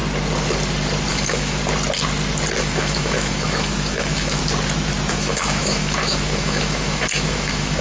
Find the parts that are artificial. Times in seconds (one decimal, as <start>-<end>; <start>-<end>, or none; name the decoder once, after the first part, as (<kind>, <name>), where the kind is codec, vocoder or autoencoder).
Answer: 1.1-1.6 (autoencoder, DAC-VAE); 2.6-4.4; 5.1-7.8